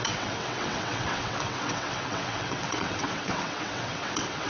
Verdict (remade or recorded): remade